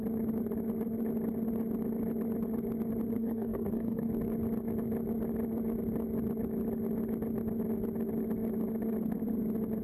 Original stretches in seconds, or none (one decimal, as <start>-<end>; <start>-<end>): 0.0-3.1; 4.1-9.8